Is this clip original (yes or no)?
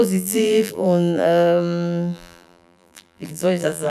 no